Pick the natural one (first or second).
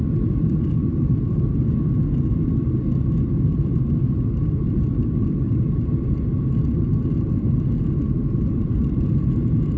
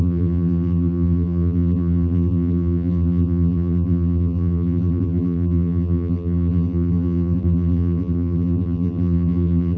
first